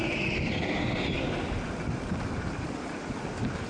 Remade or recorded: recorded